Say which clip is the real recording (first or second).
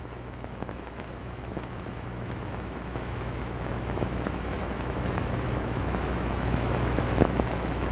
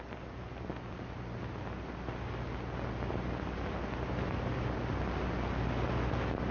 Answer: second